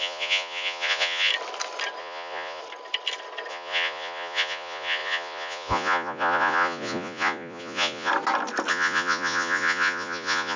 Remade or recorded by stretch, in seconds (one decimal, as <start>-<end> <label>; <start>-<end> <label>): 0.0-1.3 remade; 1.3-2.0 recorded; 2.0-2.6 remade; 2.6-3.5 recorded; 3.5-8.1 remade; 8.1-8.7 recorded; 8.7-10.6 remade